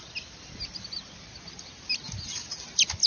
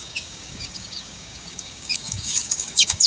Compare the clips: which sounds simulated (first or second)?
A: second